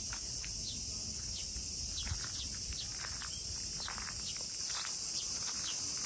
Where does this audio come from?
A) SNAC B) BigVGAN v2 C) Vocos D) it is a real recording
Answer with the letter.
D